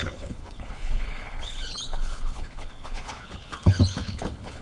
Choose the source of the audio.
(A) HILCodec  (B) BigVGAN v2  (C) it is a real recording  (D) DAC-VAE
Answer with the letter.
A